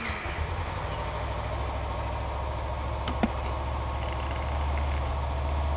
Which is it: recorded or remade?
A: recorded